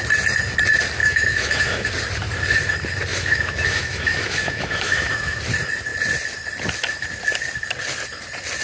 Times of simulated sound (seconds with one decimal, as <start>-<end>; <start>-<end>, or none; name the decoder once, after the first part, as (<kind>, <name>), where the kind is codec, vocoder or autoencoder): 1.0-1.9 (autoencoder, DAC-VAE); 3.1-5.4